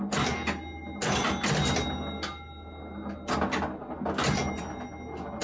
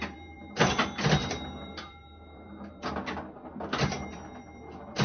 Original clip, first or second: first